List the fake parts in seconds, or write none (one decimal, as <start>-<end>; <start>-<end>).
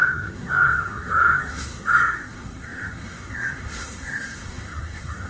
0.0-5.3